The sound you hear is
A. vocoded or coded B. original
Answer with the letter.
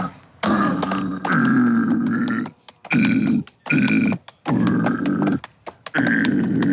B